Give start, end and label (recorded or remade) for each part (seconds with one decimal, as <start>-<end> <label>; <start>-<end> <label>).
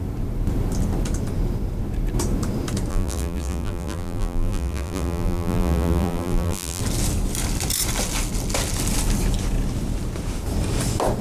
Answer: 0.0-2.9 recorded; 2.9-6.8 remade; 6.8-11.2 recorded